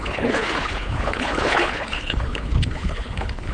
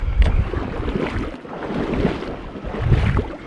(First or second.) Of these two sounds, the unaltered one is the second